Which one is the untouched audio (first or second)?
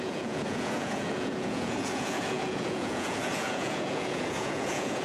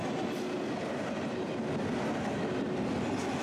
second